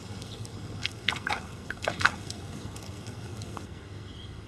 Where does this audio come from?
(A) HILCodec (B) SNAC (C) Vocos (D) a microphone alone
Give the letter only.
B